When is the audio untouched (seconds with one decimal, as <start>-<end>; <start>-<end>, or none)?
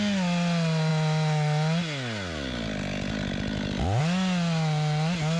0.0-5.4